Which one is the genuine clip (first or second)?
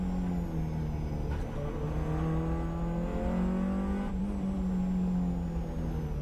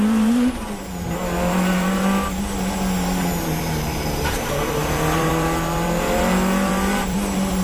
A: first